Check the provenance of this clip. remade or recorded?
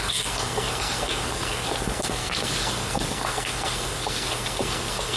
remade